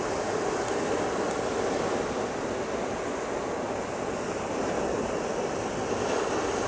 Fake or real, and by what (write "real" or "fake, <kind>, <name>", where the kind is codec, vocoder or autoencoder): real